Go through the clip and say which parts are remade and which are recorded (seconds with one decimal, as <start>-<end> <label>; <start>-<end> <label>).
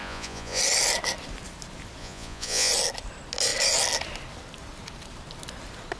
0.0-0.6 remade; 0.6-2.0 recorded; 2.0-2.7 remade; 2.7-6.0 recorded